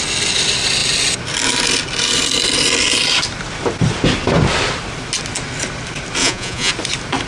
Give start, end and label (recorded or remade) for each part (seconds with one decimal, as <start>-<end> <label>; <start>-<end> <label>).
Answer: 0.0-6.2 recorded; 6.2-6.7 remade; 6.7-7.3 recorded